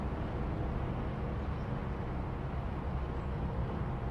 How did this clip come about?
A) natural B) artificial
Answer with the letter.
A